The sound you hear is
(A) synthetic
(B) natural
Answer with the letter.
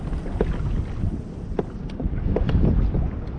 B